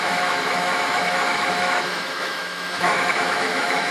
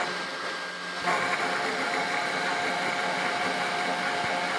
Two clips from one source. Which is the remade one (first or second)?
first